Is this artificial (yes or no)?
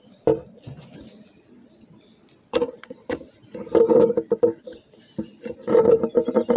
no